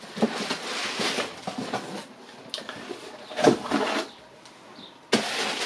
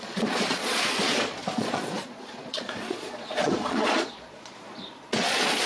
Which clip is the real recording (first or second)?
first